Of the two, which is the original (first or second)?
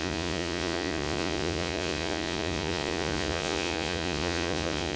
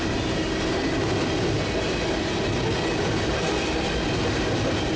second